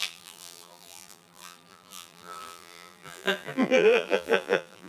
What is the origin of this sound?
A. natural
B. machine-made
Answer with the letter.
B